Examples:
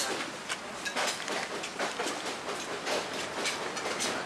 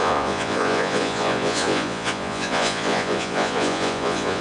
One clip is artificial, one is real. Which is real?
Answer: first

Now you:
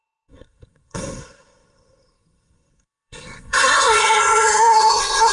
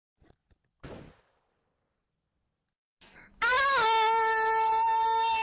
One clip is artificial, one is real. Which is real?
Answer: second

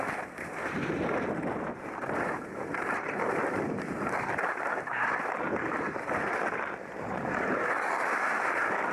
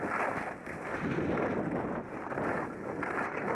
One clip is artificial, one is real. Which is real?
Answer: second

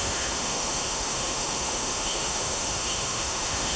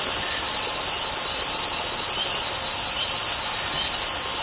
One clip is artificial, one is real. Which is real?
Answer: second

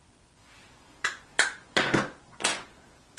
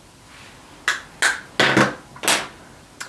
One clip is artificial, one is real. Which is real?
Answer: second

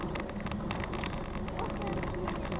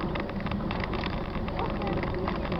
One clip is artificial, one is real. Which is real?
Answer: first